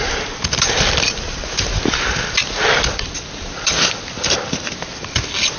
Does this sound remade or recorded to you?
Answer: remade